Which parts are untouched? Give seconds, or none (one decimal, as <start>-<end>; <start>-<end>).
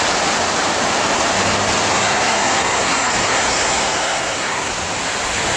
0.0-1.9; 4.7-5.6